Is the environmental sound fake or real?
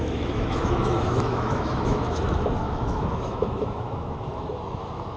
fake